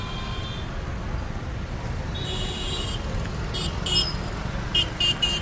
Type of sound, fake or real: real